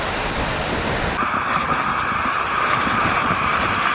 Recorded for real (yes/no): yes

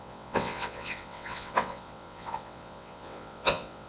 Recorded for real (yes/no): no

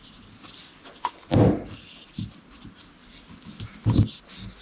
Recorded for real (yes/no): yes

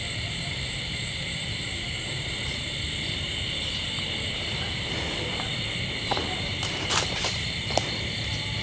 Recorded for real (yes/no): no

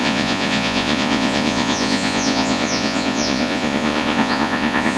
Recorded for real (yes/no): no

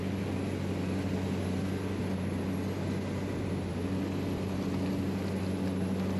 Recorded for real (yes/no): yes